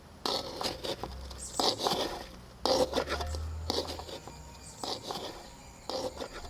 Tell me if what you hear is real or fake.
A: real